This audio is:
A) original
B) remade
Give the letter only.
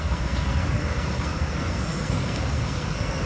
B